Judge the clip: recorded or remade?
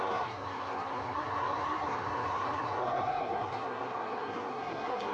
remade